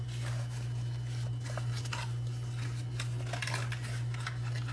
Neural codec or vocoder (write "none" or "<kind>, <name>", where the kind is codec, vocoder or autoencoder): none